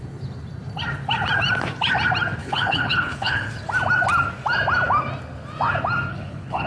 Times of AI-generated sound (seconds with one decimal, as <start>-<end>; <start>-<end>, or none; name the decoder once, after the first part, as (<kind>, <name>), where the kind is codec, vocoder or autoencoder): 2.4-3.5 (codec, HILCodec); 6.1-6.7